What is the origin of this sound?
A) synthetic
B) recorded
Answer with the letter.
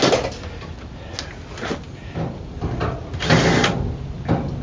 B